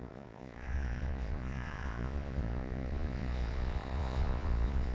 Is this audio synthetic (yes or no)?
yes